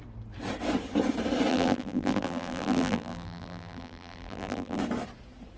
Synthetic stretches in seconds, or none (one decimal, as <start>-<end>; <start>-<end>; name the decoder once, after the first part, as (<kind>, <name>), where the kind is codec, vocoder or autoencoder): 1.5-4.8 (vocoder, BigVGAN v2)